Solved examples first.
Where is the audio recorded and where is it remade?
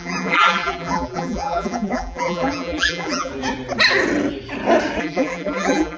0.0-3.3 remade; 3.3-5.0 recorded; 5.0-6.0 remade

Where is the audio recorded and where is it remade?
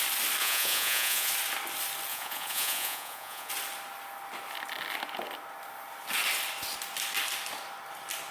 0.0-0.4 recorded; 0.4-1.3 remade; 1.3-2.1 recorded; 2.1-3.5 remade; 3.5-8.3 recorded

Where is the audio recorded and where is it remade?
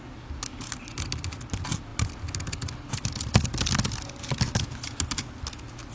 0.0-5.9 recorded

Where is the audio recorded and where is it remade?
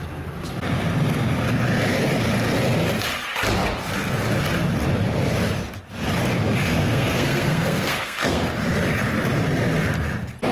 0.0-6.8 recorded; 6.8-8.5 remade; 8.5-10.5 recorded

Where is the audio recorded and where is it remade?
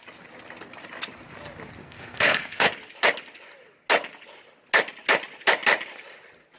0.0-1.8 recorded; 1.8-2.7 remade; 2.7-6.6 recorded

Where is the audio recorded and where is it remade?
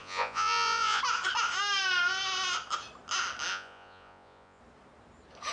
0.0-1.0 remade; 1.0-3.5 recorded; 3.5-4.6 remade; 4.6-5.5 recorded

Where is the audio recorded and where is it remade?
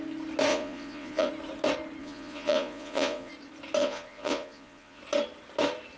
0.0-0.5 recorded; 0.5-1.3 remade; 1.3-2.0 recorded; 2.0-3.3 remade; 3.3-3.8 recorded; 3.8-5.0 remade; 5.0-6.0 recorded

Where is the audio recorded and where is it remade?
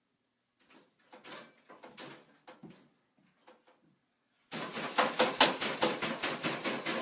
0.0-7.0 recorded